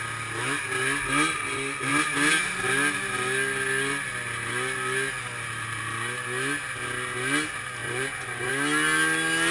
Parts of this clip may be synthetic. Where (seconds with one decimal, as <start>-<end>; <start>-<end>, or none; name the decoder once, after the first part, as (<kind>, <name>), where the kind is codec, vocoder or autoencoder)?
7.8-8.5 (vocoder, Vocos)